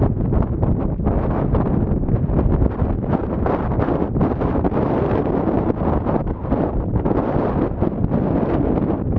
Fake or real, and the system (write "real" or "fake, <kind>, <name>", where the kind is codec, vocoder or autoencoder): real